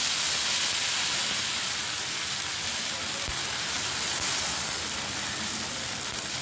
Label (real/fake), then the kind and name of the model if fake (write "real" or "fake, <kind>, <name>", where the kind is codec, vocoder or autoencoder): fake, vocoder, BigVGAN v2